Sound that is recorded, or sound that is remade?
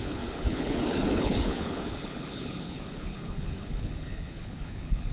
remade